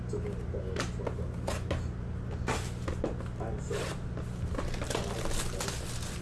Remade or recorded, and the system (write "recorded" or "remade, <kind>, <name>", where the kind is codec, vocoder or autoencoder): recorded